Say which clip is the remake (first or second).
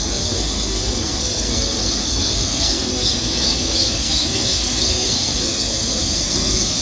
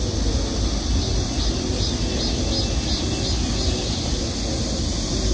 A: first